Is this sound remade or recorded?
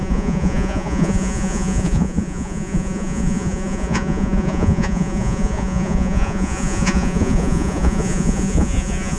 remade